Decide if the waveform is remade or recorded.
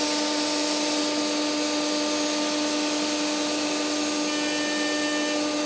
recorded